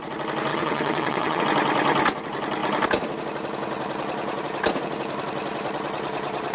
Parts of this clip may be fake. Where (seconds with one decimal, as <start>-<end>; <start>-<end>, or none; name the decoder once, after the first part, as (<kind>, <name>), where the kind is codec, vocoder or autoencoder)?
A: 0.5-1.4 (vocoder, WaveNeXt)